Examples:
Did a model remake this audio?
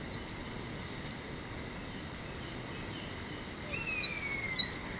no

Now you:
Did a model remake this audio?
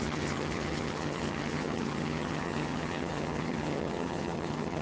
yes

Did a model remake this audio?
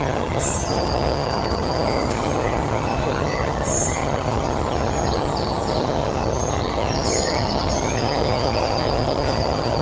yes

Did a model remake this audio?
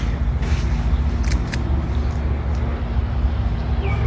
no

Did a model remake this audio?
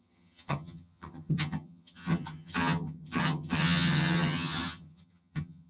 yes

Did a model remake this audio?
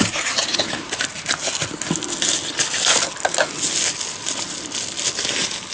no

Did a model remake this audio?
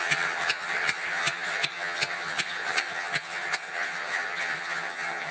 yes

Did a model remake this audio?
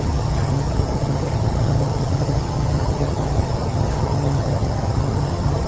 yes